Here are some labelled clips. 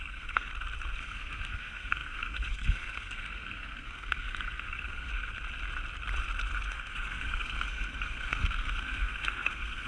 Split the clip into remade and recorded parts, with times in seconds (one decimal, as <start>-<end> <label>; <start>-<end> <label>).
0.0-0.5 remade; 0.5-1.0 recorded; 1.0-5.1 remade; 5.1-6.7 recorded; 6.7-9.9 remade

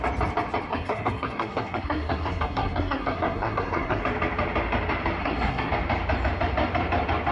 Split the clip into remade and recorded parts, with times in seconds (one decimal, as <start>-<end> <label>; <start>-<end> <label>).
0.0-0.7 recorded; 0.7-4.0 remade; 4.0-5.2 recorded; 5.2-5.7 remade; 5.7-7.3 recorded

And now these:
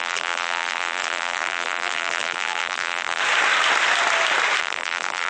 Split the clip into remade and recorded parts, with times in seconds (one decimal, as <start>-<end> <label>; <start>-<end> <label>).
0.0-3.2 remade; 3.2-4.6 recorded; 4.6-5.3 remade